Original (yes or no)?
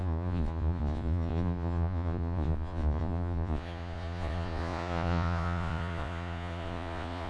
no